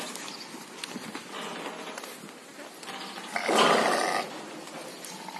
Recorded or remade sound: recorded